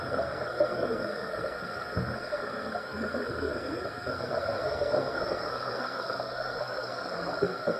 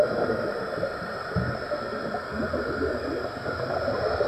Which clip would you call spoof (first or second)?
first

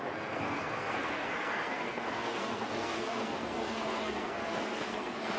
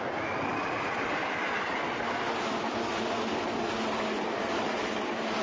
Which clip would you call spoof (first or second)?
first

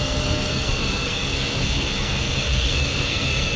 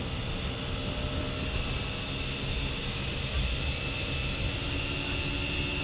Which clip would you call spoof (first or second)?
first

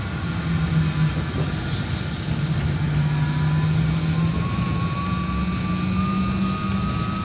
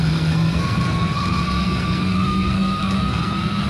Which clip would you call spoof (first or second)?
second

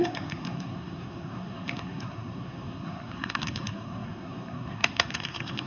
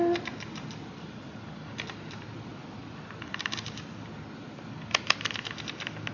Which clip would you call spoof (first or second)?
first